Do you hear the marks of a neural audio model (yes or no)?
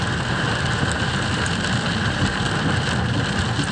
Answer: no